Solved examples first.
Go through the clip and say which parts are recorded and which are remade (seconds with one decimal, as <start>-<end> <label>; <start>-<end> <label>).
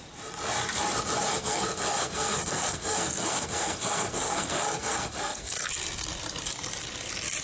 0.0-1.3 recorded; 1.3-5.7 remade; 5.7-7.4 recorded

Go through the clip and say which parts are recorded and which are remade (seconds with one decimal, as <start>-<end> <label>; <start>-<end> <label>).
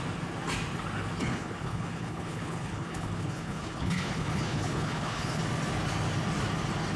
0.0-1.2 recorded; 1.2-5.4 remade; 5.4-7.0 recorded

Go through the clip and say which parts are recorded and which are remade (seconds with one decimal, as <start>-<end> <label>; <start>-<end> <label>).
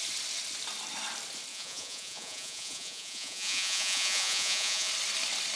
0.0-1.5 recorded; 1.5-4.9 remade; 4.9-5.6 recorded